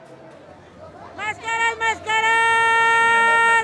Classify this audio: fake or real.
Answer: real